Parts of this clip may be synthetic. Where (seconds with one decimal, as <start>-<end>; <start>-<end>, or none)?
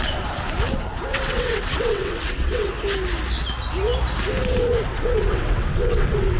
1.1-2.7; 4.9-6.4